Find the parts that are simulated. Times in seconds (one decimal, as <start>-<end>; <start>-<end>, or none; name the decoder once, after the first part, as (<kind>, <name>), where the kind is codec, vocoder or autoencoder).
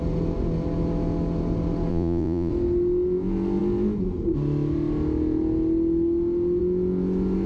1.9-2.5 (vocoder, Vocos)